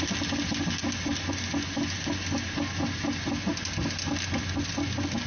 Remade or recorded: recorded